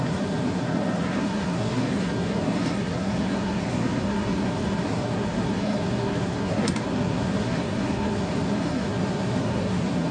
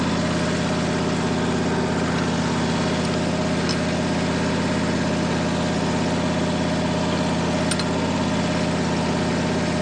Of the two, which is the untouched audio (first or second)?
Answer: second